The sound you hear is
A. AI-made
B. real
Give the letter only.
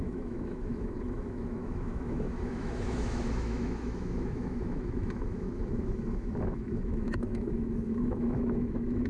A